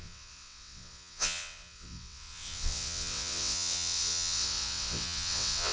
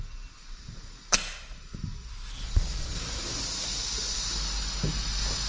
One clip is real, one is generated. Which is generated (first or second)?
first